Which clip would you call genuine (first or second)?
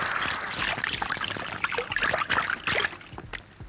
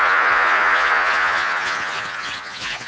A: first